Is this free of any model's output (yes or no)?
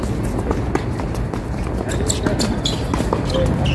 yes